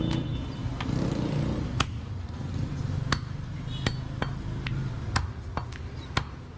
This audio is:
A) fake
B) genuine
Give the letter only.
B